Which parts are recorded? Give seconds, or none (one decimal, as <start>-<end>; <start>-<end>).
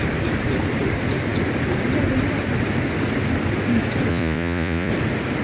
0.0-4.1; 4.9-5.4